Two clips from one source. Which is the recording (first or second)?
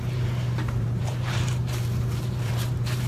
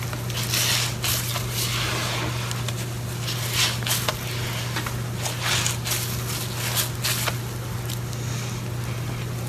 second